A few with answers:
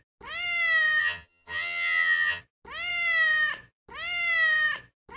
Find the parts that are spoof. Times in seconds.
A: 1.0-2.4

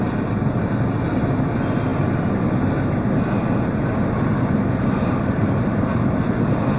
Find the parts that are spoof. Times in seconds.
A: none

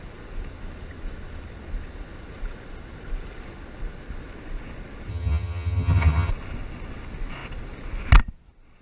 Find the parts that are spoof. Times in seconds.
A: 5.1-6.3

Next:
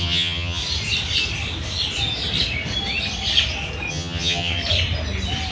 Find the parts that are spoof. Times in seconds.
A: 0.0-0.6; 3.9-4.6